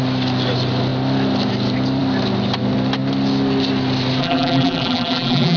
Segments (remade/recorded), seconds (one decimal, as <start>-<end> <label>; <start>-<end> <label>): 0.0-4.2 recorded; 4.2-5.6 remade